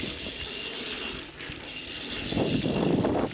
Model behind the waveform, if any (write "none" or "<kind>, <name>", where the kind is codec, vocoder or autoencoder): none